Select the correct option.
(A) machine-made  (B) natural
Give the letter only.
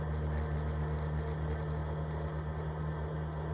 B